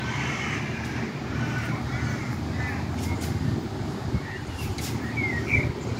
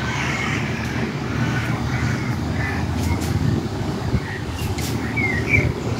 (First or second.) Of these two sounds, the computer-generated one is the second